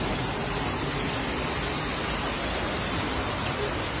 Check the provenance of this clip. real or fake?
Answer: real